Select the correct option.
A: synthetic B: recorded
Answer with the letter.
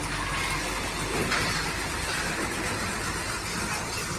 B